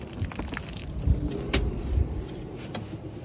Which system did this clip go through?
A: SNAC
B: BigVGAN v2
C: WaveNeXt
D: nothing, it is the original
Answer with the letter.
D